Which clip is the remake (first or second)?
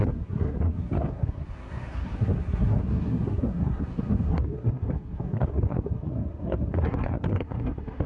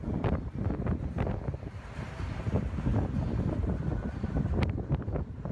first